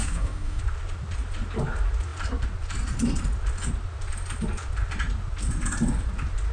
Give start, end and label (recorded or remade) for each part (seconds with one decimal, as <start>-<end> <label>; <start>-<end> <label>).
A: 0.0-0.6 remade; 0.6-6.5 recorded